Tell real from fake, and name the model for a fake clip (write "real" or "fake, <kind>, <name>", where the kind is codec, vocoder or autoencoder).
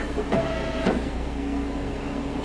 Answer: fake, codec, SNAC